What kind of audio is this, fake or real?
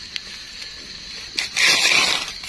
real